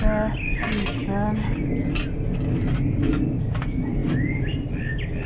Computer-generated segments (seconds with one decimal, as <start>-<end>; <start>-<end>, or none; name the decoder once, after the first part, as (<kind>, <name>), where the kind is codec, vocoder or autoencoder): none